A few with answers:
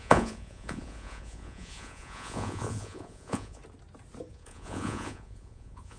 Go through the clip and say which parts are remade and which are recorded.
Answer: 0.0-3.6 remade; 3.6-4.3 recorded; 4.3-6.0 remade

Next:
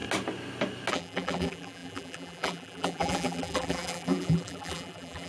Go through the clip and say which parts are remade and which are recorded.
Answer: 0.0-0.9 recorded; 0.9-5.3 remade

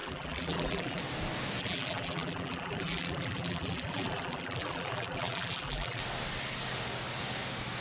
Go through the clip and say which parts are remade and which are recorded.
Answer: 0.0-1.0 remade; 1.0-1.6 recorded; 1.6-6.0 remade; 6.0-7.8 recorded

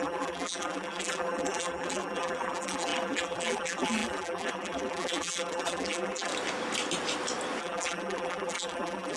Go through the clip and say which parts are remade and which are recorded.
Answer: 0.0-6.3 remade; 6.3-7.6 recorded; 7.6-9.2 remade

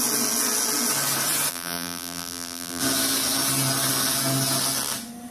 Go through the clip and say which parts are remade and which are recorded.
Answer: 0.0-1.5 recorded; 1.5-2.8 remade; 2.8-5.3 recorded

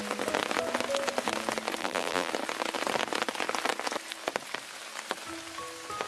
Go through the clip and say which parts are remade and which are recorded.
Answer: 0.0-1.8 recorded; 1.8-2.3 remade; 2.3-6.1 recorded